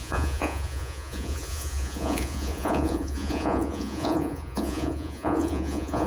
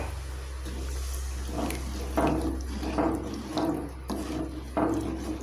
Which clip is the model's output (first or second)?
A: first